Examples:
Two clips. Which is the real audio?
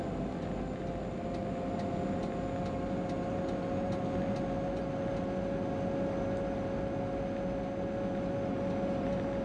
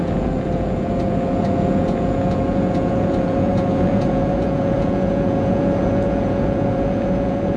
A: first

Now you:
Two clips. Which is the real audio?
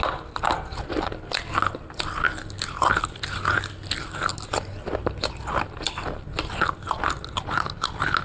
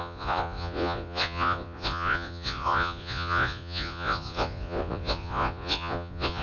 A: first